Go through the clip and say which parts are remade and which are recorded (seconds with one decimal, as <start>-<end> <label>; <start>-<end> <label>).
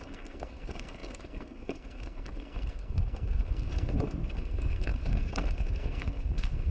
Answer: 0.0-6.7 remade